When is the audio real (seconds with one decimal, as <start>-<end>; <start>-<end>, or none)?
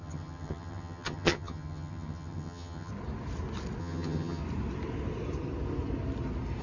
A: 2.9-3.8; 4.4-6.6